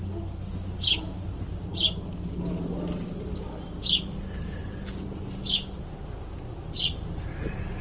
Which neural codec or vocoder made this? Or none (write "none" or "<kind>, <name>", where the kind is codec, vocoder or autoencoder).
none